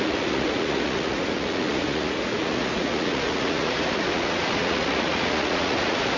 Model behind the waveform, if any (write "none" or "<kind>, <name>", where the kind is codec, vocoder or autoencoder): vocoder, Vocos